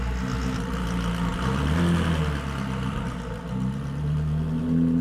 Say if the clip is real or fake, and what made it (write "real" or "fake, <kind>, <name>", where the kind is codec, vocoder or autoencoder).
real